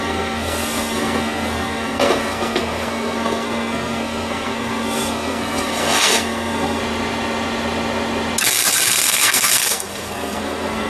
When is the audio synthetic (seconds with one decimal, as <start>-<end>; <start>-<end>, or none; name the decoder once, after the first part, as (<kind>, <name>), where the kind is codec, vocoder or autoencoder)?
0.0-6.8 (codec, SNAC); 8.9-10.9